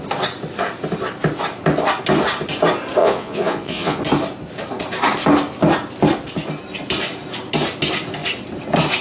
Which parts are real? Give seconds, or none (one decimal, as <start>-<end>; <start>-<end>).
0.0-3.0; 4.0-9.0